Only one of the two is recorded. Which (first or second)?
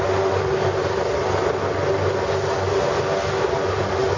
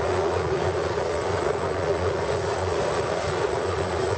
first